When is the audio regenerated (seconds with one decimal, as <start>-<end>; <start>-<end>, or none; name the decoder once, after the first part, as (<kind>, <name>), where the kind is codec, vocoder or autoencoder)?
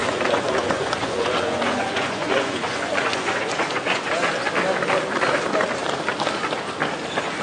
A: 0.0-4.3 (vocoder, Vocos)